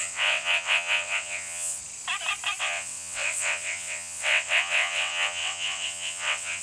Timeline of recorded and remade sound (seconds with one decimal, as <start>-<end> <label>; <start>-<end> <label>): 0.0-1.8 remade; 1.8-2.6 recorded; 2.6-6.6 remade